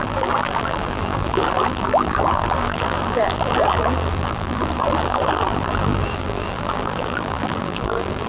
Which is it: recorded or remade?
remade